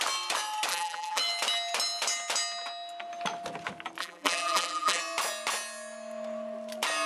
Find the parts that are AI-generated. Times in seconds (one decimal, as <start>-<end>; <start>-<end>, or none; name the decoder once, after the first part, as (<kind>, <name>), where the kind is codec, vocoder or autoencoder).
0.7-1.2 (vocoder, BigVGAN v2); 4.0-5.0